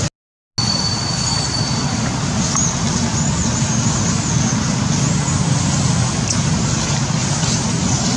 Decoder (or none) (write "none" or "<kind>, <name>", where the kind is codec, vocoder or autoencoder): none